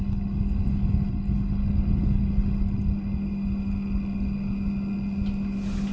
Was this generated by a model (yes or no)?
no